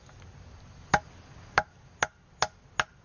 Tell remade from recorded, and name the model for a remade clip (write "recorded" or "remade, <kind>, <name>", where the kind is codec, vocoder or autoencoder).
recorded